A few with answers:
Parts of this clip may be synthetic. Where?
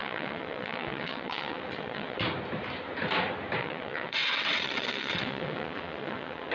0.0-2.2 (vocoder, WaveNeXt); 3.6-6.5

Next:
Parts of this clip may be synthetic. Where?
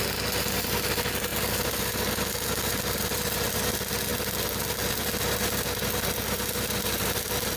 none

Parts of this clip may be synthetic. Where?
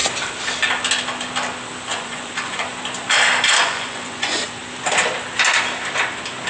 1.9-2.7 (vocoder, Vocos); 3.6-4.6